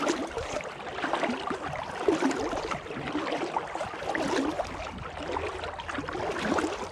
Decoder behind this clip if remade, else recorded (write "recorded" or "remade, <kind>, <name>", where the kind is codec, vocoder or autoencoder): recorded